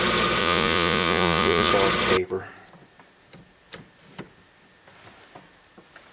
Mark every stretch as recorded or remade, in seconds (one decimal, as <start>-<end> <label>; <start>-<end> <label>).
0.0-0.4 recorded; 0.4-1.7 remade; 1.7-6.1 recorded